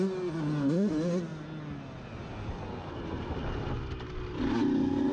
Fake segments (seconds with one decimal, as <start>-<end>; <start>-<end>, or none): none